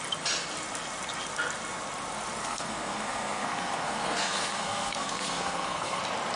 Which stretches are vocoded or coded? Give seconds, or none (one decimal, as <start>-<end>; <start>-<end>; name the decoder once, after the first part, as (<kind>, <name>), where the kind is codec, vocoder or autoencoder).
2.4-6.0 (codec, SNAC)

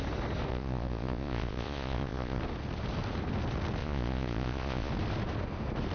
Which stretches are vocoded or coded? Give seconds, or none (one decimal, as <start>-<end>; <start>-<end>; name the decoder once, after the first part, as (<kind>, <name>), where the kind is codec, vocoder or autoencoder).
0.5-2.4 (vocoder, Vocos); 3.8-4.9